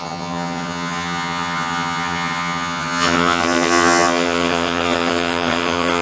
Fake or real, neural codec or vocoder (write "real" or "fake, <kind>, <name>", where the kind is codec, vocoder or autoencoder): fake, vocoder, HiFi-GAN